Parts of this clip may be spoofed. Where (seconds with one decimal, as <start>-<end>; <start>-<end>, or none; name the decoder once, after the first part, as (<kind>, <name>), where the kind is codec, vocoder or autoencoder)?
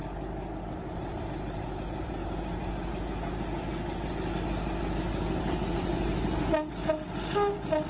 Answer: none